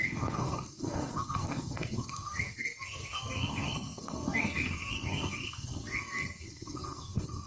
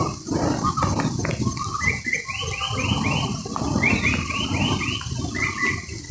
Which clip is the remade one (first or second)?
first